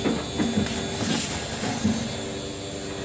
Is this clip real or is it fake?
real